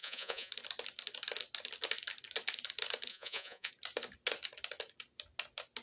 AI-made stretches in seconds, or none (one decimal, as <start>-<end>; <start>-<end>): 0.0-0.5; 3.1-3.7

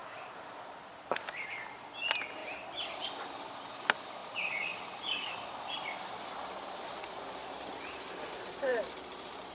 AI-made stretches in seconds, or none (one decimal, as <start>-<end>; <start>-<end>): 0.0-1.9; 4.2-6.9

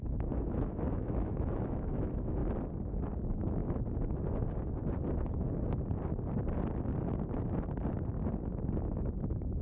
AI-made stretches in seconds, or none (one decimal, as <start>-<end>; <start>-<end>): 0.0-2.4; 3.0-3.6; 8.6-9.6

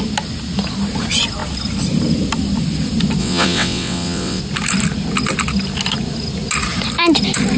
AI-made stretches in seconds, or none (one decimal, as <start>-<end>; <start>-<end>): 3.2-4.4